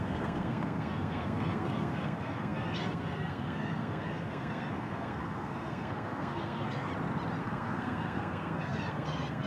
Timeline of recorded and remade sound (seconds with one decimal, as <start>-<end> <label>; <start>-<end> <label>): 0.0-6.9 remade; 6.9-7.4 recorded; 7.4-9.5 remade